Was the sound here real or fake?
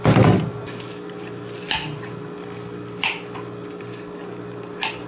real